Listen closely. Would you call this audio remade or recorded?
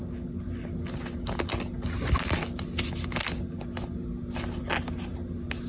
recorded